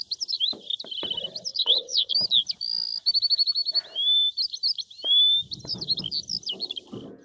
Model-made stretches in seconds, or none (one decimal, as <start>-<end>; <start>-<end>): 1.5-2.1